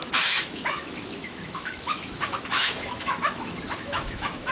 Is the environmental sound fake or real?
fake